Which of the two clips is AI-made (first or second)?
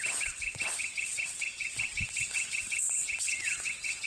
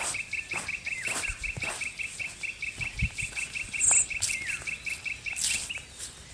first